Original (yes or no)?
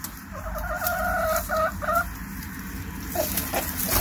yes